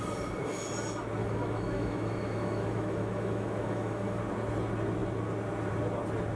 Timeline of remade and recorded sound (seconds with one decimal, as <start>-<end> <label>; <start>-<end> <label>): 0.0-1.2 recorded; 1.2-4.2 remade; 4.2-6.4 recorded